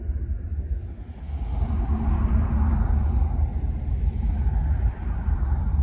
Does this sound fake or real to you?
real